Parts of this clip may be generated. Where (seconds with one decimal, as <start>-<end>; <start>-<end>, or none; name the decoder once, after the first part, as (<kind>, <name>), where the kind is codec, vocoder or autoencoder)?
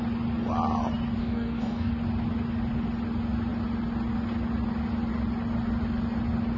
1.2-1.9 (codec, DAC)